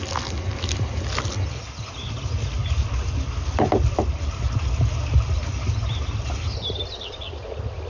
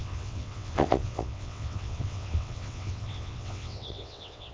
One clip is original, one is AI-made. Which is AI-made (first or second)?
second